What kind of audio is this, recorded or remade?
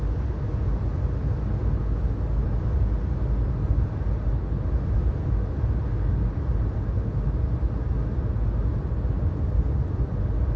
recorded